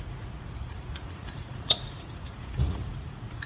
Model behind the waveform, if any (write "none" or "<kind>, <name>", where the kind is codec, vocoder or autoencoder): vocoder, Vocos